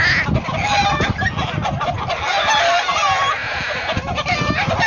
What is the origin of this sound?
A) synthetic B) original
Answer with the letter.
B